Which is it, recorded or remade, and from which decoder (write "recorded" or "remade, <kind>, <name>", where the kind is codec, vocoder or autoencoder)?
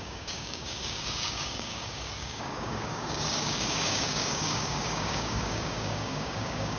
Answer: remade, codec, DAC